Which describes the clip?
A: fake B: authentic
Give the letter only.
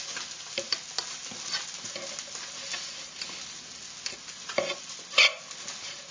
B